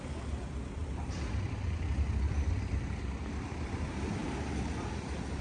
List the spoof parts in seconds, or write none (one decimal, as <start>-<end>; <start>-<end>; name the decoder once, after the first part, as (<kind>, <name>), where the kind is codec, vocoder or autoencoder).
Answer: 0.8-3.7 (vocoder, BigVGAN v2)